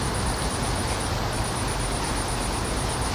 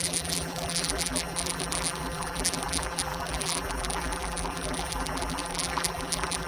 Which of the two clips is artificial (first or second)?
second